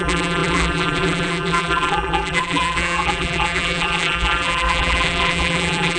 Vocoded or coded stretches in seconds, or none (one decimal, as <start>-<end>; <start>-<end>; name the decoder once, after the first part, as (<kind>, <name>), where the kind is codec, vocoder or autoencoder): 0.0-6.0 (vocoder, BigVGAN v2)